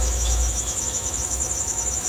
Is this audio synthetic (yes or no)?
yes